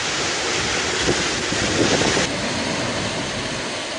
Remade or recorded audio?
recorded